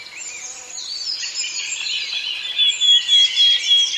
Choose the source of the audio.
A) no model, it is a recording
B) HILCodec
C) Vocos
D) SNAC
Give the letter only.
A